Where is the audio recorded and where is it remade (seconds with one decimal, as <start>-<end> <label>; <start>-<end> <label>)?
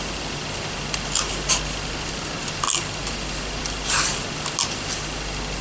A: 0.0-5.6 recorded